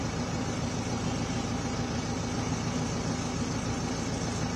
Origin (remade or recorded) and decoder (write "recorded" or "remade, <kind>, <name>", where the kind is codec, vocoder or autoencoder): recorded